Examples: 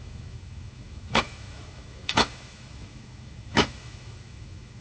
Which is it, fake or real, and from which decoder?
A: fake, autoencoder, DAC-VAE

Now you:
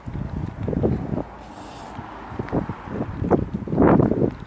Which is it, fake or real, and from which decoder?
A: real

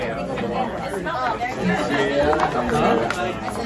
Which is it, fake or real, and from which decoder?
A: real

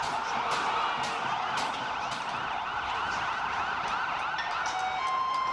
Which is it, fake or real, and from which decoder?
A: real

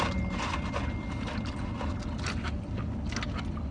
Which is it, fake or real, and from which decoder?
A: real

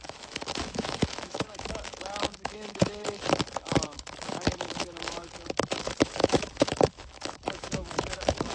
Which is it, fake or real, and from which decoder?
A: fake, autoencoder, DAC-VAE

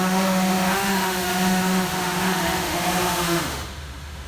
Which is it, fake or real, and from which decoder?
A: fake, autoencoder, DAC-VAE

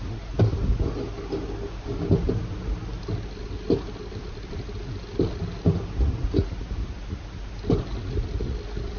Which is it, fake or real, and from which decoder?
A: real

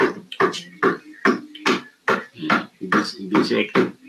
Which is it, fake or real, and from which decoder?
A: real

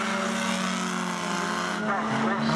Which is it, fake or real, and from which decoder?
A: real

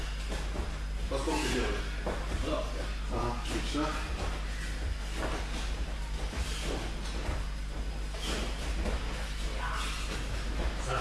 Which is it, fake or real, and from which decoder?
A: real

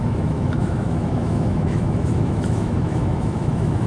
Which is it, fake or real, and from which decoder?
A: fake, autoencoder, DAC-VAE